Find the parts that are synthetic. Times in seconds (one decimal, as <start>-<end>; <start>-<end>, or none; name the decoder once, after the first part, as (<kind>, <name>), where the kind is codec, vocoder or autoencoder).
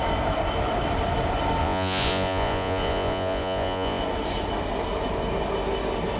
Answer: 1.6-4.0 (vocoder, Vocos)